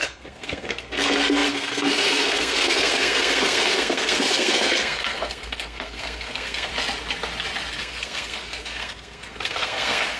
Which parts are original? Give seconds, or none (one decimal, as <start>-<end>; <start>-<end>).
6.7-7.8